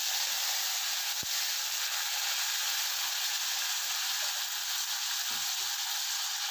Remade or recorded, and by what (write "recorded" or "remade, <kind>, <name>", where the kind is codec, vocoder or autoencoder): recorded